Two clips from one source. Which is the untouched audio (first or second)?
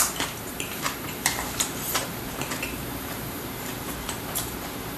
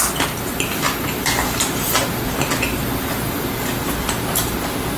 second